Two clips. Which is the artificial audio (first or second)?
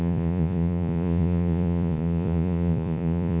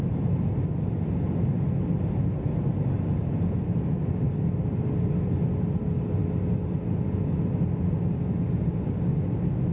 first